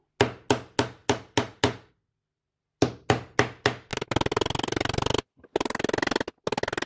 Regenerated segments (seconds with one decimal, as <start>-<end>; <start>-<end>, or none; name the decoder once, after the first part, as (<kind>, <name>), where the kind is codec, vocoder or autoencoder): none